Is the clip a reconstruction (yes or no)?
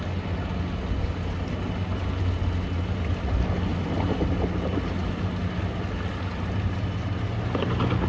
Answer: no